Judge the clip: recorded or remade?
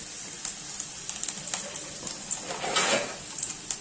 recorded